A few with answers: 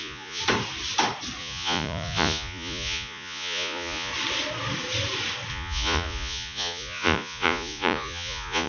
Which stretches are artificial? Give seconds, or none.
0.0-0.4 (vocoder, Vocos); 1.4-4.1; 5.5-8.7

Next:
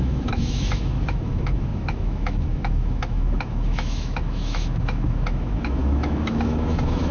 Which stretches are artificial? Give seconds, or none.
0.0-7.1 (autoencoder, DAC-VAE)

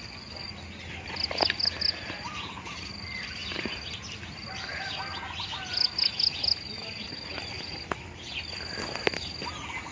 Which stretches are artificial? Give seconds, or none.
none

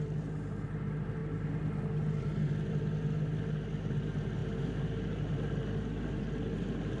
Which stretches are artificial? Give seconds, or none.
none